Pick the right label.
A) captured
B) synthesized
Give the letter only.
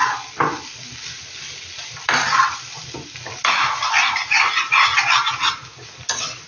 A